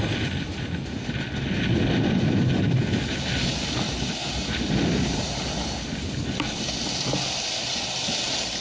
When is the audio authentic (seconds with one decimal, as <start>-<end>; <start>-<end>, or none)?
0.0-8.6